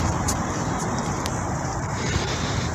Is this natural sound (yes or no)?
no